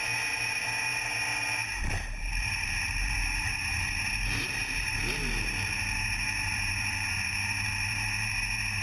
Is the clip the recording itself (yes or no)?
no